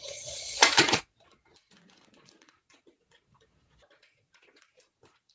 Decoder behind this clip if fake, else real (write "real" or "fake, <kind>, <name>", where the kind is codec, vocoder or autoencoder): fake, vocoder, Vocos